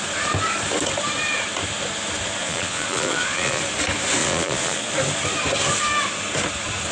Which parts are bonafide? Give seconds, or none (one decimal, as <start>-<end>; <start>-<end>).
0.0-2.4; 3.6-4.2; 4.9-6.9